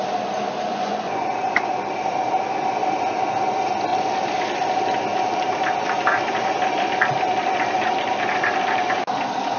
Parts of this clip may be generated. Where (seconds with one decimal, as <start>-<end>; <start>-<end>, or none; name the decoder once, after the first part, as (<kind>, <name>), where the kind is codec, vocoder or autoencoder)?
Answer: 0.7-1.7 (vocoder, Vocos)